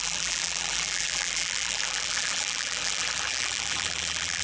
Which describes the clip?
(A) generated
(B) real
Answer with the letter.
A